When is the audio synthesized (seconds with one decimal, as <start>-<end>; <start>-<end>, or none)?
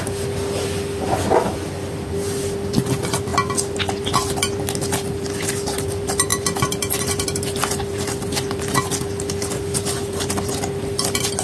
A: 0.0-3.3; 4.8-6.3; 7.0-11.4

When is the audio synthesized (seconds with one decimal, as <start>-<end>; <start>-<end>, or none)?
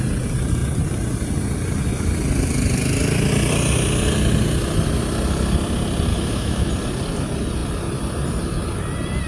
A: 6.1-6.7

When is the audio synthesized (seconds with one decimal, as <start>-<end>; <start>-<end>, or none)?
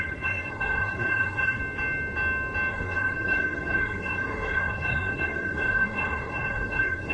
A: 0.0-1.6; 2.7-7.1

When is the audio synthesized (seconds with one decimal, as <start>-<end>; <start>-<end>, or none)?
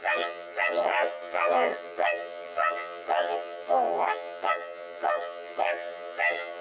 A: 0.0-6.6